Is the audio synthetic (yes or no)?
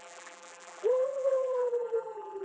yes